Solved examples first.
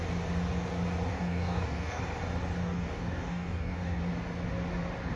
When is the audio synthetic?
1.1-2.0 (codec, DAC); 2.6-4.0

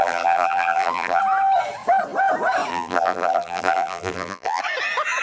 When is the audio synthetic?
0.0-1.2 (vocoder, BigVGAN v2); 2.7-4.6

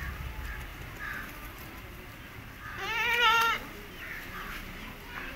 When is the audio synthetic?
none